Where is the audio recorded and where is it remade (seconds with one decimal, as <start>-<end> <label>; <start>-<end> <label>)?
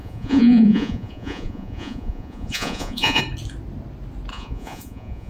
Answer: 0.0-3.2 remade; 3.2-4.3 recorded; 4.3-5.3 remade